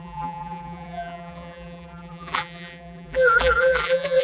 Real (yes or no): no